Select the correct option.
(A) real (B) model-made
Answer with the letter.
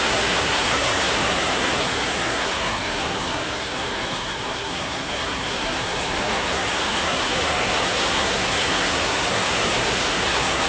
B